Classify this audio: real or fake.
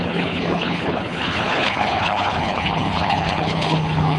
fake